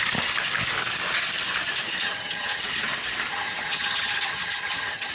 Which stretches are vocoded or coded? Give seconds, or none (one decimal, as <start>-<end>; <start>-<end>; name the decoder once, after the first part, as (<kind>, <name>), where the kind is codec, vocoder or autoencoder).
2.0-2.6 (vocoder, HiFi-GAN); 3.3-5.1